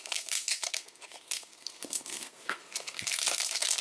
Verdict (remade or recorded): remade